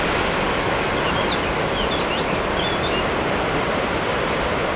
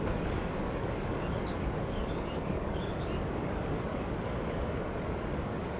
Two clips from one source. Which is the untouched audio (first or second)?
first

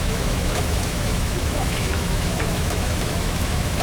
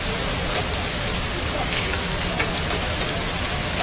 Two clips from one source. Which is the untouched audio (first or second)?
second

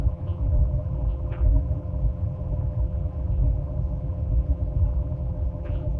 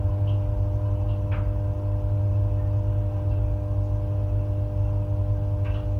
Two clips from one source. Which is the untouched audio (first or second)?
second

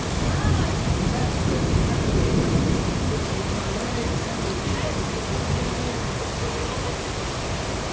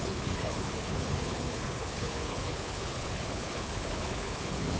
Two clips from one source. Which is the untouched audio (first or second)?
first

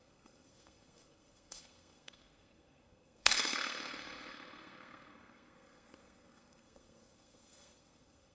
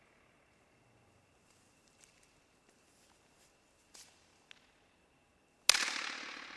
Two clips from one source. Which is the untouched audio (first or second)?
second